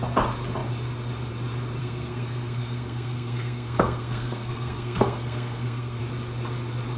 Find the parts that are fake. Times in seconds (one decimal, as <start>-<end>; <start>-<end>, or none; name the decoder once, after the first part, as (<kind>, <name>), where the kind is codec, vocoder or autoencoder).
1.8-6.0 (codec, SNAC)